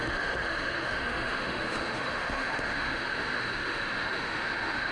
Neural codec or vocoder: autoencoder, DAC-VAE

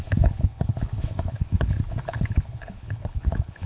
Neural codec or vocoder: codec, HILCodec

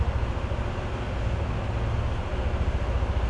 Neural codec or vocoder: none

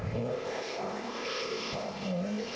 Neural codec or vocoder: codec, ZipCodec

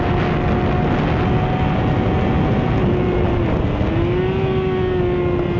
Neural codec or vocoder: none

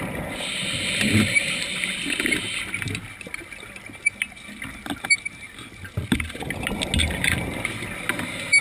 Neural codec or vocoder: none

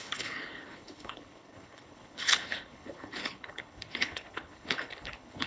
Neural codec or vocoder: codec, HILCodec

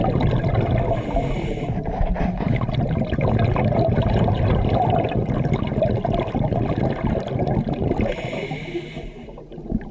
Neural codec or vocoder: none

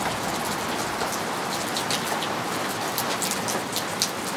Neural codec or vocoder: none